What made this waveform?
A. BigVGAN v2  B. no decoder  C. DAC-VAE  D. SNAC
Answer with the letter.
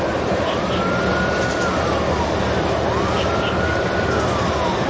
B